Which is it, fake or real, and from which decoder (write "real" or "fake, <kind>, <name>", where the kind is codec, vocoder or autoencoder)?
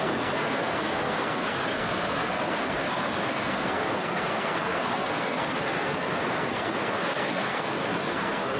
fake, codec, SNAC